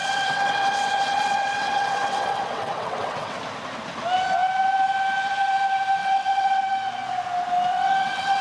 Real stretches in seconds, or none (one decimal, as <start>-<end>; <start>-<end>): 3.4-6.0; 6.6-7.7